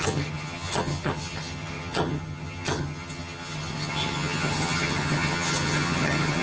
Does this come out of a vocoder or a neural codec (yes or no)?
yes